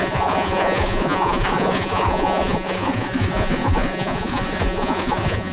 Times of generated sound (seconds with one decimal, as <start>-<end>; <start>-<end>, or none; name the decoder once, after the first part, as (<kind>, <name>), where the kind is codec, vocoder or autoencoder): 0.0-5.5 (vocoder, Vocos)